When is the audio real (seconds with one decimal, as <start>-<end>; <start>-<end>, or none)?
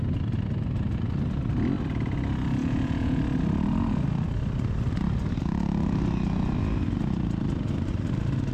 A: 0.0-2.6; 3.2-8.5